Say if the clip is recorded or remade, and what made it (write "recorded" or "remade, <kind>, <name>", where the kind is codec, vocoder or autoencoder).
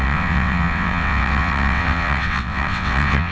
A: remade, vocoder, WaveNeXt